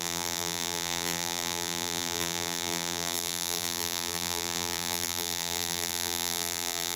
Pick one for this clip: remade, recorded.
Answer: remade